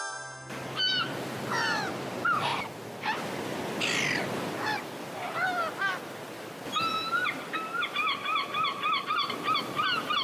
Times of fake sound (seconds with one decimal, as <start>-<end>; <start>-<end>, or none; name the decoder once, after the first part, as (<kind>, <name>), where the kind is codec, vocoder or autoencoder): none